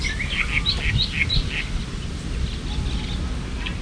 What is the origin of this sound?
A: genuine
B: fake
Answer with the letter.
A